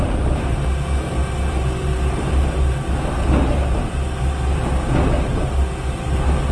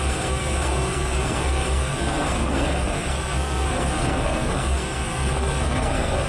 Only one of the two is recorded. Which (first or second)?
first